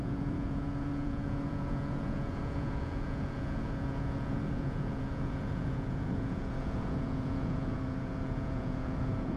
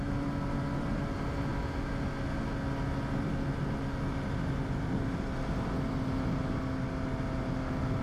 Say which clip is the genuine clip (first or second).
second